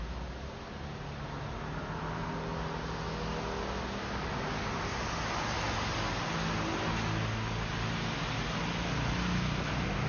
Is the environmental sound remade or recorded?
recorded